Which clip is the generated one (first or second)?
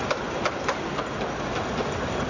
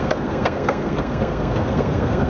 second